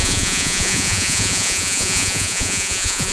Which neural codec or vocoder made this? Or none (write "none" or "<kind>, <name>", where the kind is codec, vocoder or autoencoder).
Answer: vocoder, Vocos